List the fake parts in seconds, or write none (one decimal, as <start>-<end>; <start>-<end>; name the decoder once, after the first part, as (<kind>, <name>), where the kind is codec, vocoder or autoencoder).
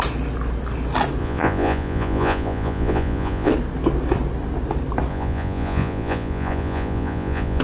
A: 1.2-3.5 (vocoder, Vocos); 5.1-7.6